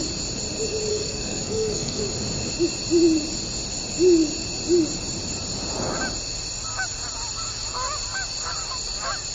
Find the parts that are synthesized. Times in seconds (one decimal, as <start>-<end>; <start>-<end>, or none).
0.9-2.0